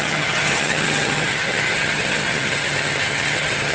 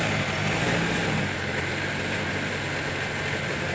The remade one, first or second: first